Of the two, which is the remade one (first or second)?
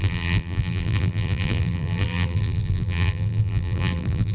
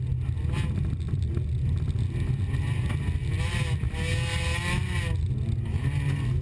first